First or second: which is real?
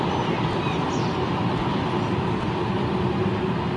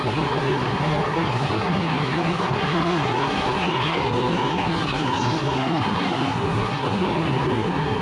first